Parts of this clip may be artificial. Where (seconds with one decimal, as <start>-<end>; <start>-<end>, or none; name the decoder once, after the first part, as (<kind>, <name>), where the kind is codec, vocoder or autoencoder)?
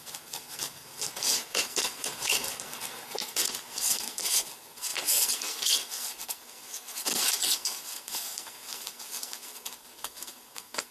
0.0-10.9 (codec, SNAC)